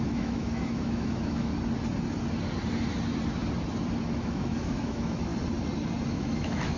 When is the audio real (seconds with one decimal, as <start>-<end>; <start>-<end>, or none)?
1.5-4.1; 5.3-6.1